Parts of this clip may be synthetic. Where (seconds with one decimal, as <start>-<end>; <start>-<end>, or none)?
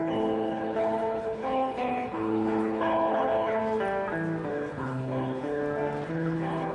0.0-3.6; 4.5-5.6; 6.1-6.7